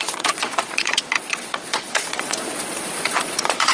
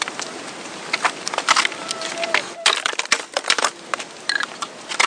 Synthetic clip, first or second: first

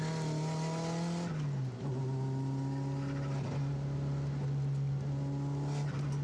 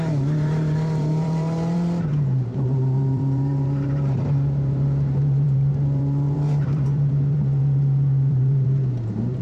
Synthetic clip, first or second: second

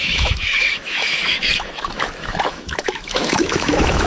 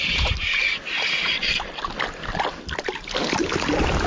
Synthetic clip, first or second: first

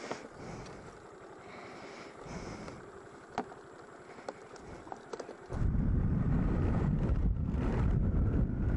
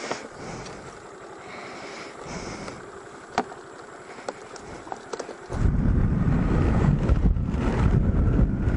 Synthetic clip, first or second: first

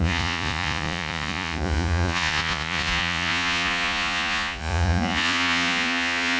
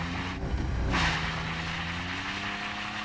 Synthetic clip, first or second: first